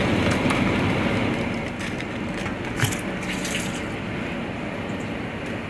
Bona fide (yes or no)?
yes